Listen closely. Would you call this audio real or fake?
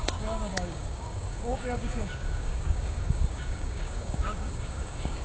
fake